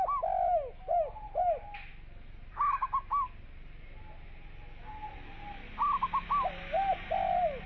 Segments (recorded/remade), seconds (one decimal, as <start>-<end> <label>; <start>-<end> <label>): 0.0-7.7 recorded

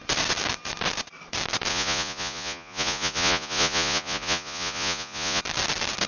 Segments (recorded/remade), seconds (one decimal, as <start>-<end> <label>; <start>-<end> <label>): 0.0-1.7 recorded; 1.7-5.4 remade; 5.4-6.1 recorded

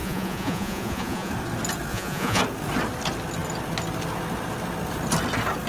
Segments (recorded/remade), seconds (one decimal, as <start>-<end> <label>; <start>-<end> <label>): 0.0-1.3 remade; 1.3-1.9 recorded; 1.9-2.4 remade; 2.4-5.7 recorded

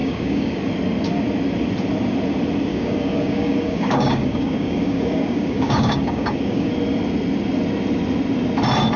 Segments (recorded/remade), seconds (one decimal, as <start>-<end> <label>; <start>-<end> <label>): 0.0-0.6 remade; 0.6-2.7 recorded; 2.7-6.7 remade; 6.7-9.0 recorded

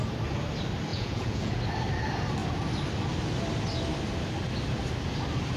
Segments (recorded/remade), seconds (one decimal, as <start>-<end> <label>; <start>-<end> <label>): 0.0-0.9 recorded; 0.9-1.5 remade; 1.5-5.6 recorded

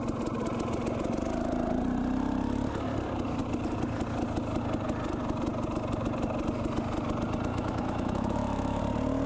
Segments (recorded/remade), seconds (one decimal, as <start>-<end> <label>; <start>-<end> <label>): 0.0-7.5 recorded; 7.5-8.8 remade; 8.8-9.3 recorded